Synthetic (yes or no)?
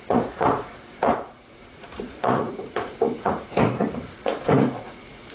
yes